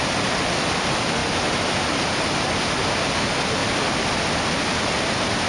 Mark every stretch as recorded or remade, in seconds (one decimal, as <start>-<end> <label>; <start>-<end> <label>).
0.0-5.5 recorded